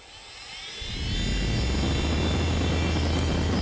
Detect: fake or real real